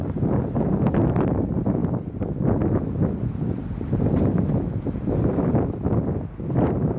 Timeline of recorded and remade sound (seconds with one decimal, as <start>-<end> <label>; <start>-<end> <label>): 0.0-7.0 recorded